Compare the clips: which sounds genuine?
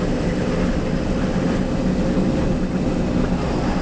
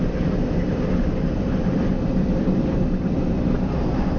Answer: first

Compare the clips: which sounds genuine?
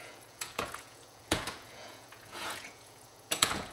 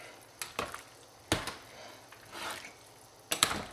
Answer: second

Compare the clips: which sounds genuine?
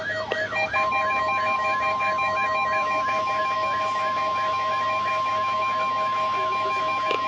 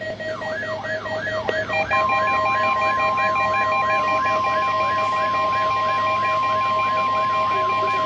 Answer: second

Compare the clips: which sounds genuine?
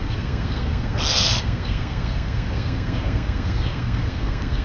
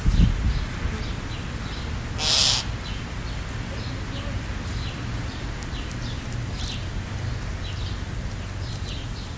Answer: second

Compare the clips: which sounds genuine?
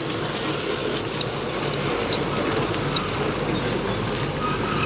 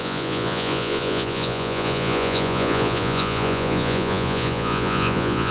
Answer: first